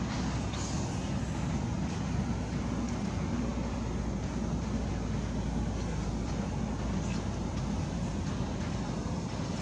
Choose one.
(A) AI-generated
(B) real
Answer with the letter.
B